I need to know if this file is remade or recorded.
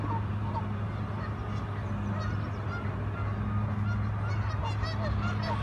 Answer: recorded